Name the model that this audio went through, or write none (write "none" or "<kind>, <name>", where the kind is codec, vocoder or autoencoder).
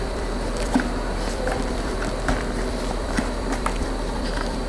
vocoder, BigVGAN v2